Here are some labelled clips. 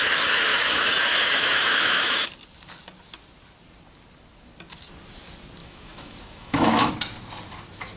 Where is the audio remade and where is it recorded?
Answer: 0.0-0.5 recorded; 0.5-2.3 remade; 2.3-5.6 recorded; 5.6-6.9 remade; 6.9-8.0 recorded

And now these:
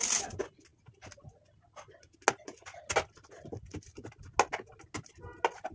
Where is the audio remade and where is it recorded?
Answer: 0.0-5.7 recorded